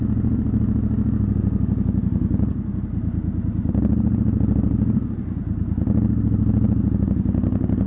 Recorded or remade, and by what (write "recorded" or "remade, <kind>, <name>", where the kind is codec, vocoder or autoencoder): recorded